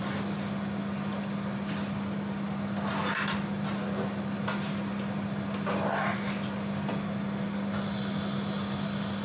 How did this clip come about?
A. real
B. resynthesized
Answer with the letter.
A